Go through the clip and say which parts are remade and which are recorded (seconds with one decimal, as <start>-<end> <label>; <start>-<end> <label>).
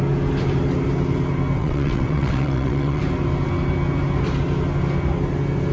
0.0-1.6 recorded; 1.6-3.0 remade; 3.0-5.7 recorded